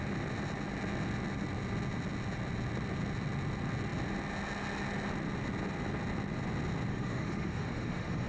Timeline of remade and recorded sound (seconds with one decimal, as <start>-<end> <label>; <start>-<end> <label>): 0.0-6.9 recorded; 6.9-8.3 remade